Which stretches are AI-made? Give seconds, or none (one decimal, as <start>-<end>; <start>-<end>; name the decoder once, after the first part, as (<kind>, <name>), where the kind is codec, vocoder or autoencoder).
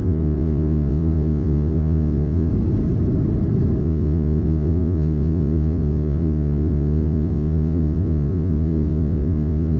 0.0-2.5 (vocoder, Vocos); 3.8-9.8